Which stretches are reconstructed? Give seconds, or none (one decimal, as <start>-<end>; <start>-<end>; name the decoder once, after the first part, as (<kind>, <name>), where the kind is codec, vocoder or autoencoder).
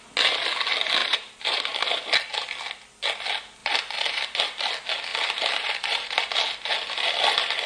1.0-1.6 (vocoder, BigVGAN v2); 3.6-4.2; 5.1-6.2